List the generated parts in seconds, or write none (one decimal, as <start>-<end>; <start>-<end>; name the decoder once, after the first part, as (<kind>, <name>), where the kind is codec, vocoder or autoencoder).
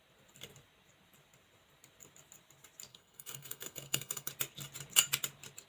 2.9-4.3 (codec, SNAC)